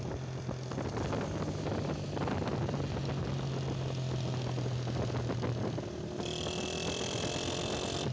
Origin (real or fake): real